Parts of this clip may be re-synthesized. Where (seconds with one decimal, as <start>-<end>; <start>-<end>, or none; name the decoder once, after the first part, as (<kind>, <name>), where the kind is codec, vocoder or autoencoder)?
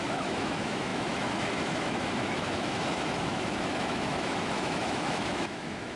0.0-6.0 (autoencoder, DAC-VAE)